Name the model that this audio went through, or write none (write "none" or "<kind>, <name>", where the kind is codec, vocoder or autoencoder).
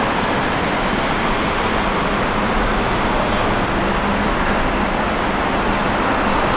none